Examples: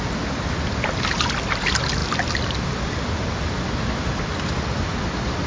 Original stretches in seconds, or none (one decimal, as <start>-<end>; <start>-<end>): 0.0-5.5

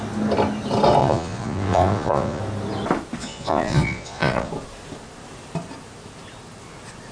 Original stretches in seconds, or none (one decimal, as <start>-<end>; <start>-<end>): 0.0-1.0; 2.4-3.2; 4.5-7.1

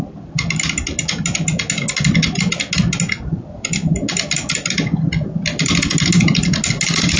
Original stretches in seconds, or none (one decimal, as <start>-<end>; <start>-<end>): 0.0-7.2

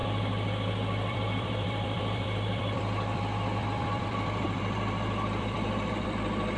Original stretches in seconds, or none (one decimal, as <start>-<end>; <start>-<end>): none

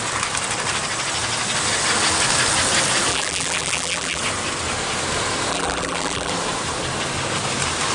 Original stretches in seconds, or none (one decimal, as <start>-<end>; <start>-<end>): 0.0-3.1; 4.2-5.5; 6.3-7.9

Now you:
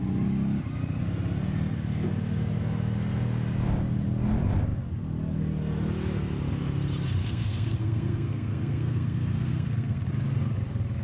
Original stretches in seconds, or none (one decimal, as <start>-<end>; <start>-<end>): 0.0-7.2; 10.1-11.0

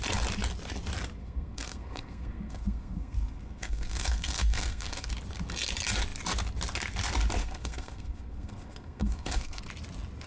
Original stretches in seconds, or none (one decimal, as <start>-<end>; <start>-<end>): 0.0-1.2; 5.1-7.4; 9.6-10.3